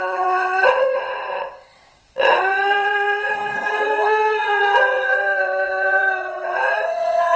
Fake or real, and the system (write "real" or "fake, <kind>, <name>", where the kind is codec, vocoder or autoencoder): fake, vocoder, WaveNeXt